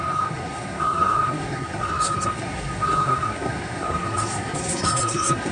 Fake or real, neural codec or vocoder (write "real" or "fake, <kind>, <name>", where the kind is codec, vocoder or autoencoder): fake, codec, SNAC